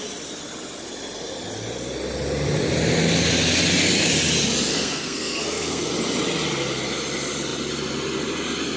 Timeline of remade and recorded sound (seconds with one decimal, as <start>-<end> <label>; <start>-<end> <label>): 0.0-4.7 recorded; 4.7-5.9 remade; 5.9-8.8 recorded